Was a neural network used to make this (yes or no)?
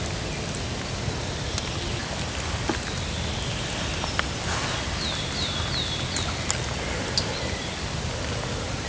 no